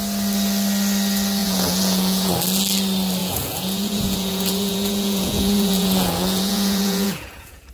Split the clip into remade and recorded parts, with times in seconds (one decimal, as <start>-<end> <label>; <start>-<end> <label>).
0.0-1.4 recorded; 1.4-2.3 remade; 2.3-3.2 recorded; 3.2-7.7 remade